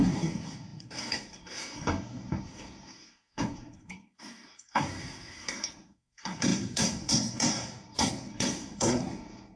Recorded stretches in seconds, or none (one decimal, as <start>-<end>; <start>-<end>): none